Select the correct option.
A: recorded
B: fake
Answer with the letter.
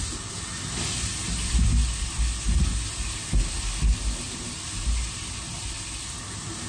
A